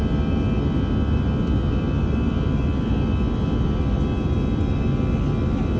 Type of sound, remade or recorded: recorded